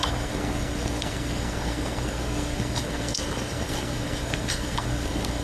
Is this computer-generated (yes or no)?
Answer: yes